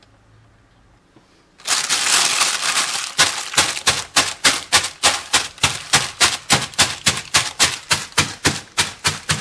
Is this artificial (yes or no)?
no